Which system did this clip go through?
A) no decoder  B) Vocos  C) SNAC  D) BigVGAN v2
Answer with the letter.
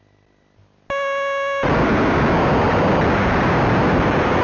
A